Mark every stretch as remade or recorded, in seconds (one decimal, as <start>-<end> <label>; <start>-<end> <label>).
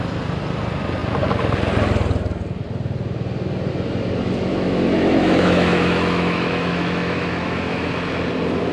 0.0-4.5 recorded; 4.5-7.9 remade; 7.9-8.7 recorded